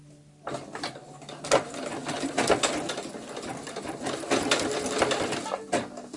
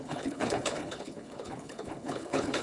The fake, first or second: second